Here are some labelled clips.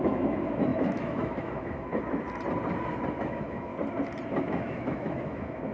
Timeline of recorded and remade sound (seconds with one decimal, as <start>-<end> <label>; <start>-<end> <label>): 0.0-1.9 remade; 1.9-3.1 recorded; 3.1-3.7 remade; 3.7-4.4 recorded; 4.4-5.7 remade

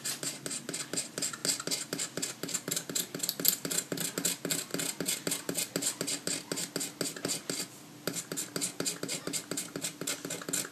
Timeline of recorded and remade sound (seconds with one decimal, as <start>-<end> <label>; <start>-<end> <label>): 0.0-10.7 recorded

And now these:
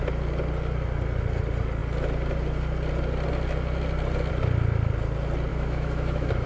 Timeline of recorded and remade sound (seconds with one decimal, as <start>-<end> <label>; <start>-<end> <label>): 0.0-5.5 recorded; 5.5-6.5 remade

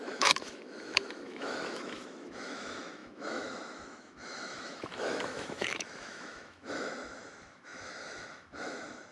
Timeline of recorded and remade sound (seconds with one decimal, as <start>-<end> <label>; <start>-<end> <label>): 0.0-9.1 remade